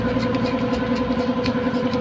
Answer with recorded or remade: recorded